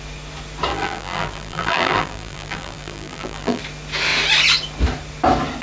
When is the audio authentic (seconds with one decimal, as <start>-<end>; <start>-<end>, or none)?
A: 0.0-0.7; 3.6-5.6